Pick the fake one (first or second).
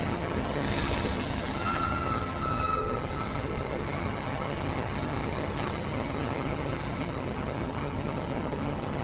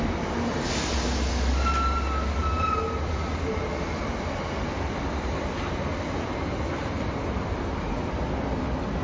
first